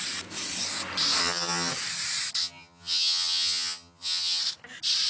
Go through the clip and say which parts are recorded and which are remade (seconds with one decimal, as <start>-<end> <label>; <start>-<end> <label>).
0.0-1.2 recorded; 1.2-1.7 remade; 1.7-2.4 recorded; 2.4-4.4 remade; 4.4-5.1 recorded